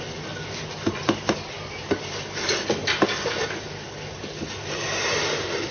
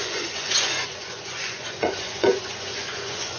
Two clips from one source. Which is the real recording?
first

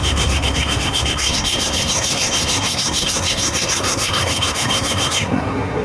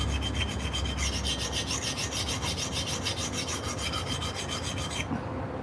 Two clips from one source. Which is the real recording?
second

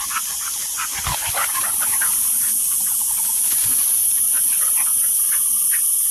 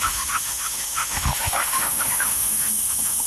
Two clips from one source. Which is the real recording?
first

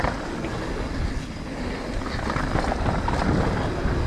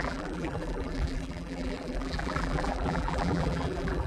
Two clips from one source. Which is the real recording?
first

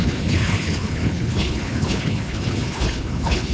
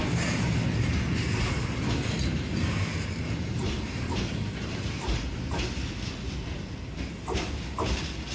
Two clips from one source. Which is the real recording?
second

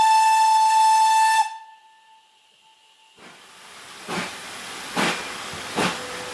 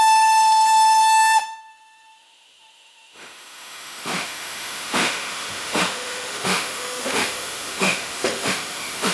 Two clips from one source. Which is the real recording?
first